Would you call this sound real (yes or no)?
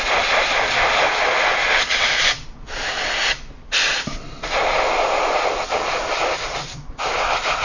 no